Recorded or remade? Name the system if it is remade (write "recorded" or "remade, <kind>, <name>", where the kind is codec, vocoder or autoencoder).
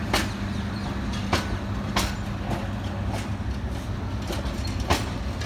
recorded